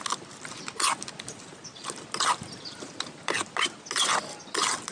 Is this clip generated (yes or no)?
no